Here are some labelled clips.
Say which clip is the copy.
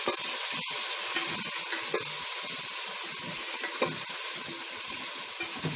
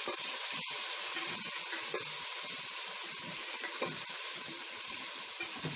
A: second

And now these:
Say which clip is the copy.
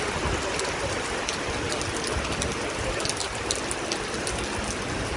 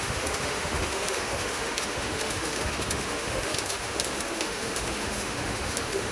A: second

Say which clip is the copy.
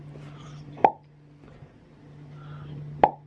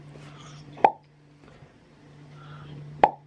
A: second